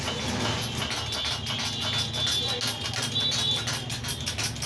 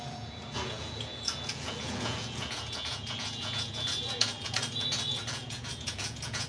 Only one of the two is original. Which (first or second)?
first